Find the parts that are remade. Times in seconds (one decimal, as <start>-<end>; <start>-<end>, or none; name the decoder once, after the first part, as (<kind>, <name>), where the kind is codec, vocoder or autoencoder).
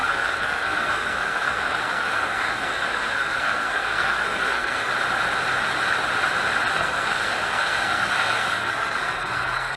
0.0-4.9 (codec, SNAC); 6.7-9.8